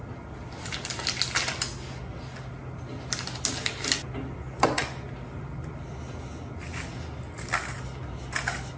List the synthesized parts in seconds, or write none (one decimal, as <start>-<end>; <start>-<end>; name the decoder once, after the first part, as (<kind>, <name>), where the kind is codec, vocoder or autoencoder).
none